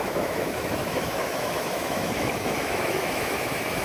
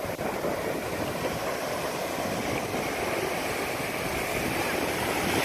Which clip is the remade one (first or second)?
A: first